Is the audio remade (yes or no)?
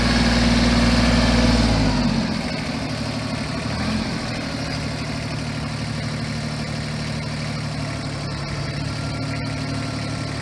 no